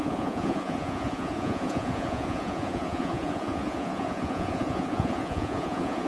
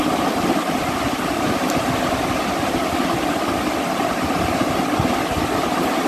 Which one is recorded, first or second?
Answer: second